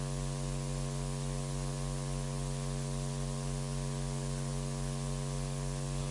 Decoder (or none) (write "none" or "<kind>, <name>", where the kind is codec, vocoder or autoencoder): none